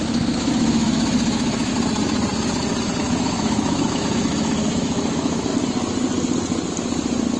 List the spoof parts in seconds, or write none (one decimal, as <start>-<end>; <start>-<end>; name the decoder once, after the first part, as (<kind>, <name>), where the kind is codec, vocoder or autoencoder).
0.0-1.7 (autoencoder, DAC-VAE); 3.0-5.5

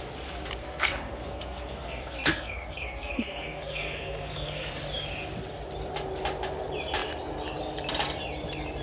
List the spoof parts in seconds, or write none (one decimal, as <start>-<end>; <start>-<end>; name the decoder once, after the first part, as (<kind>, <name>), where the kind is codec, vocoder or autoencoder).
0.6-4.7 (codec, SNAC)

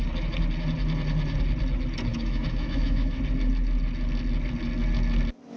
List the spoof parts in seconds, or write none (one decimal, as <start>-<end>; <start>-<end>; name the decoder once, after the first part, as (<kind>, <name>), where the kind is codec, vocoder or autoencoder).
2.1-3.2 (autoencoder, DAC-VAE)

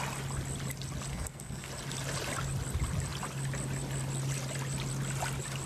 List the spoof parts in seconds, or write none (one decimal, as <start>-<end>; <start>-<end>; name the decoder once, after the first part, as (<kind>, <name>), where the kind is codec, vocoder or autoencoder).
1.1-1.7 (codec, SNAC)